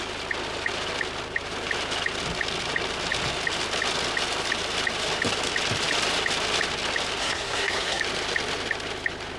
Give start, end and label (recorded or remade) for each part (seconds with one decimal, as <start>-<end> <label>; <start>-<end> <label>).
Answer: 0.0-7.2 recorded; 7.2-8.0 remade; 8.0-9.4 recorded